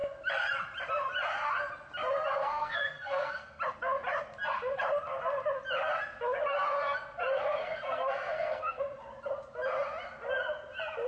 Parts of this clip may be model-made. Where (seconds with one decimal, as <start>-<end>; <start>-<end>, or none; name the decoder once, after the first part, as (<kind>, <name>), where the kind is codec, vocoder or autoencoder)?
2.4-3.6 (codec, SNAC); 7.6-8.8